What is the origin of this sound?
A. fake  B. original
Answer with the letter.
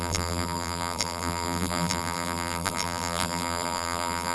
A